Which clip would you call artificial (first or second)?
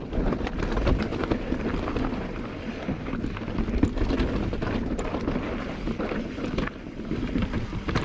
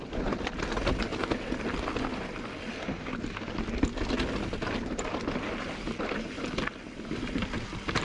first